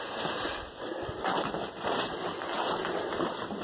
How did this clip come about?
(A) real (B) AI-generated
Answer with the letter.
A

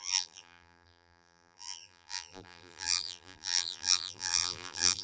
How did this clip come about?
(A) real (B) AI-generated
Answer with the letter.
B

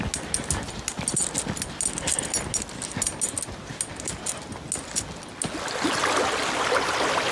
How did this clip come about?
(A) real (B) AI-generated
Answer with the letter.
A